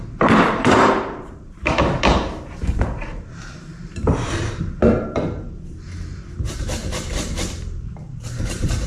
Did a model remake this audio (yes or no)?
yes